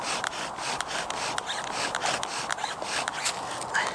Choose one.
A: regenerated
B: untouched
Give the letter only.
B